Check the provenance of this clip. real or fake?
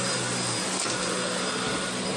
real